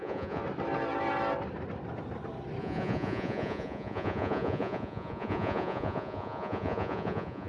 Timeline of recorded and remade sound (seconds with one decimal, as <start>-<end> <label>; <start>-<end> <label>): 0.0-0.4 remade; 0.4-2.6 recorded; 2.6-7.5 remade